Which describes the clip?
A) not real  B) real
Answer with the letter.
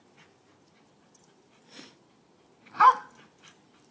B